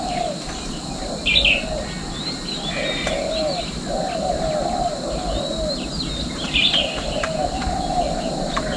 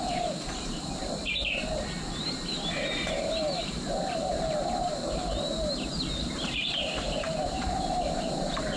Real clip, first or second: first